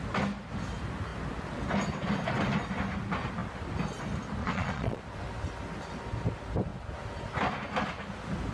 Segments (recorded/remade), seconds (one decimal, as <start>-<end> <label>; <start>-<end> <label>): 0.0-4.4 recorded; 4.4-5.0 remade; 5.0-8.5 recorded